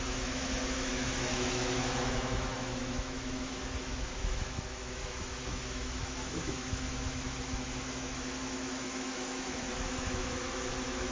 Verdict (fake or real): fake